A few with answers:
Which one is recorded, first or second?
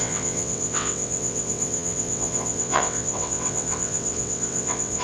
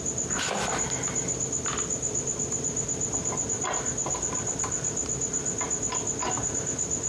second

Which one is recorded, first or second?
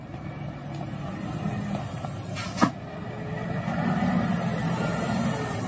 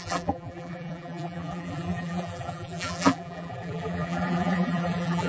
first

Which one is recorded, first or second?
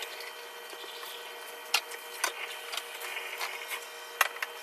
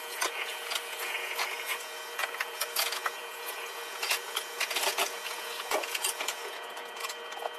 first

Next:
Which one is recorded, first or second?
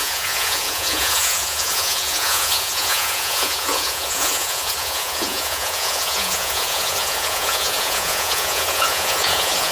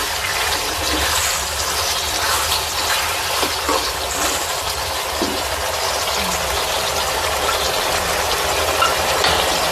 second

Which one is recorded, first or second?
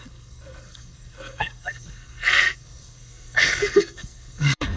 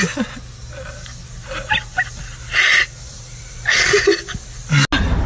second